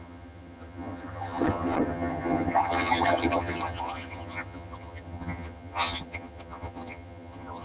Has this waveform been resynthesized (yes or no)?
yes